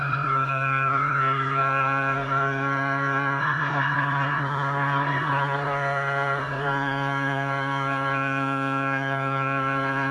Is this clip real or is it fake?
fake